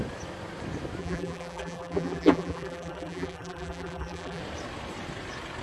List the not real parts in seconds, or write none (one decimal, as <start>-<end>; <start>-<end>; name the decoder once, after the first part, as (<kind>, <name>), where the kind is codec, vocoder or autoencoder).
1.0-4.4 (vocoder, BigVGAN v2)